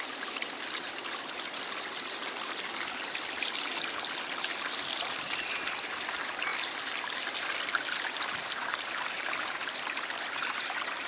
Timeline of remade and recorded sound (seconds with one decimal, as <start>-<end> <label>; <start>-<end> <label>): 0.0-11.1 recorded